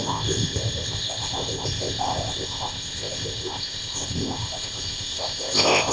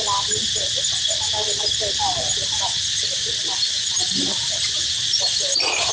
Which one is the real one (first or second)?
second